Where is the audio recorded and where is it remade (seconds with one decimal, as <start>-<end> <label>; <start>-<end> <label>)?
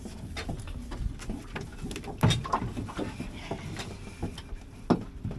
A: 0.0-5.4 recorded